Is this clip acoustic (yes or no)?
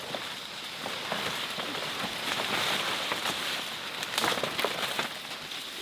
yes